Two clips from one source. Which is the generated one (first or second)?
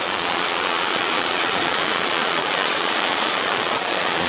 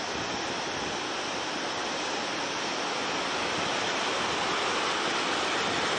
first